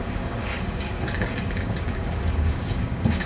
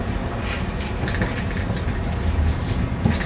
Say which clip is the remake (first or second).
first